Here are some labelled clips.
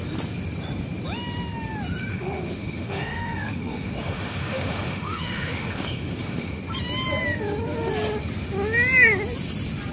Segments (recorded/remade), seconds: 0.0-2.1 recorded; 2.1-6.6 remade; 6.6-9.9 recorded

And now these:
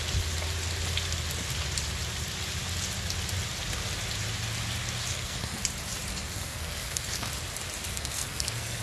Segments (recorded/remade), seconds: 0.0-5.1 recorded; 5.1-5.6 remade; 5.6-6.1 recorded; 6.1-7.3 remade; 7.3-7.9 recorded; 7.9-8.8 remade